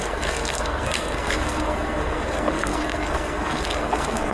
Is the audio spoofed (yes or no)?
yes